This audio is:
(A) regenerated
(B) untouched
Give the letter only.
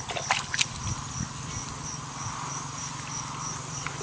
B